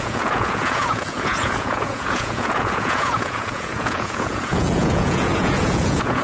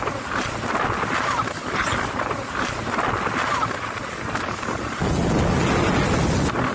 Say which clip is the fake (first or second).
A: first